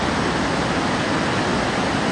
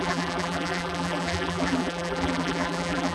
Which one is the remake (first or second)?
second